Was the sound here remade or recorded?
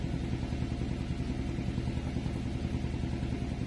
recorded